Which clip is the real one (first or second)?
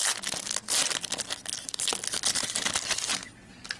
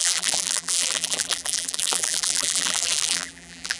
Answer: first